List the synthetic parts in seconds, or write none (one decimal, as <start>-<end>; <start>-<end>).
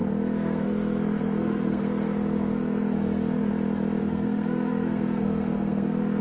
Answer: 0.0-3.5; 4.0-6.2